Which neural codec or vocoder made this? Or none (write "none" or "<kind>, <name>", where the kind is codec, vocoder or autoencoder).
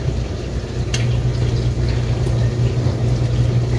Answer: none